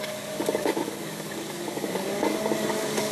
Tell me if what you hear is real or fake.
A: fake